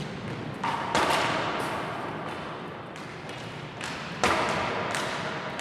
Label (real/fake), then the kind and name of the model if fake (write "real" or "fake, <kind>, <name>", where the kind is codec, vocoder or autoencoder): real